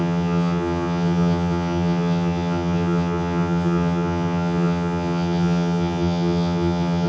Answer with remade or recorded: remade